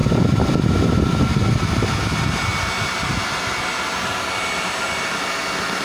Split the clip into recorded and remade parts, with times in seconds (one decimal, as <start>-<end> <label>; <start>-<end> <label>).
0.0-5.8 recorded